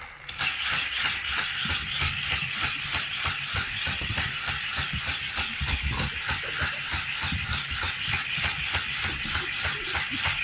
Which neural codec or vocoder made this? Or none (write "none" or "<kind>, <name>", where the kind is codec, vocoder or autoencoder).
none